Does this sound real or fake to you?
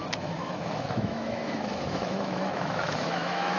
fake